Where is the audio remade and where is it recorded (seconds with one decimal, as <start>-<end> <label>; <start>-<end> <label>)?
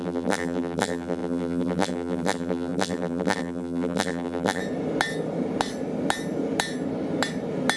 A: 0.0-4.6 remade; 4.6-7.8 recorded